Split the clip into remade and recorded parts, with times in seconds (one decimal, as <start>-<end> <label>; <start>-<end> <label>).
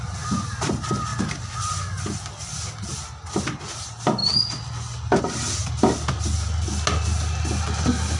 0.0-8.2 recorded